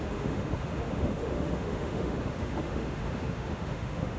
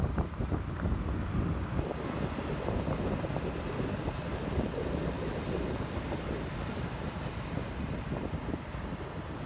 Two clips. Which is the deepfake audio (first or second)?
first